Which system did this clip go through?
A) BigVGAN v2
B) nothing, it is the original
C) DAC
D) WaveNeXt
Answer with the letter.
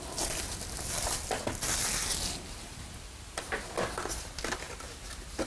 B